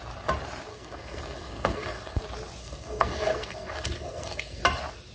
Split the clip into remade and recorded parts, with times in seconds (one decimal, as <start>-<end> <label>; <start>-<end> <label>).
0.0-0.7 recorded; 0.7-2.2 remade; 2.2-2.6 recorded; 2.6-4.6 remade; 4.6-5.1 recorded